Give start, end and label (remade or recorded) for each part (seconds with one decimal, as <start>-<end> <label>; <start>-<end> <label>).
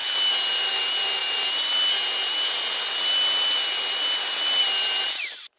0.0-5.6 recorded